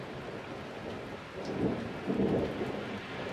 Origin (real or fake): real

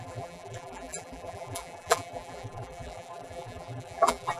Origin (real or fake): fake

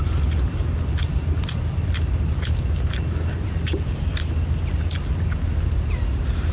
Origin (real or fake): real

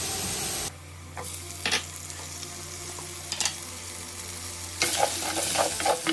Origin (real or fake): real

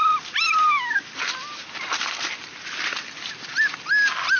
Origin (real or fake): real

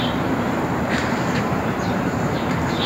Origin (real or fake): fake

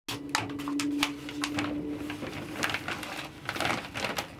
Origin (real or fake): real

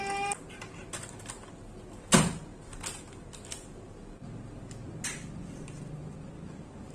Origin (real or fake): real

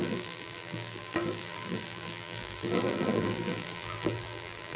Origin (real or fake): fake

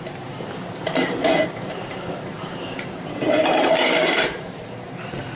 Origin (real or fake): fake